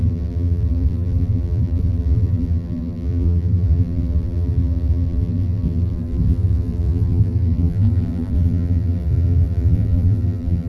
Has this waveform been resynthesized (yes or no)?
yes